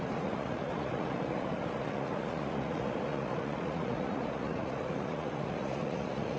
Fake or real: fake